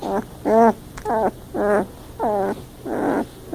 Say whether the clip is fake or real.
real